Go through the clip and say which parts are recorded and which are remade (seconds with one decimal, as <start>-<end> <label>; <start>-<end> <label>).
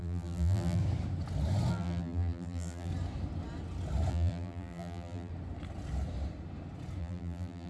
0.0-0.8 remade; 0.8-1.7 recorded; 1.7-2.9 remade; 2.9-4.1 recorded; 4.1-5.3 remade; 5.3-7.0 recorded; 7.0-7.7 remade